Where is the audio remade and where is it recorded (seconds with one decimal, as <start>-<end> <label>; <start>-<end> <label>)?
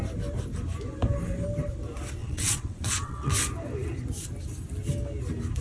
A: 0.0-2.2 recorded; 2.2-3.3 remade; 3.3-5.6 recorded